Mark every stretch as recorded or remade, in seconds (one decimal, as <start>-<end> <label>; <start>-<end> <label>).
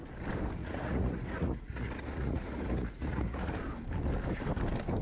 0.0-0.6 recorded; 0.6-3.6 remade; 3.6-5.0 recorded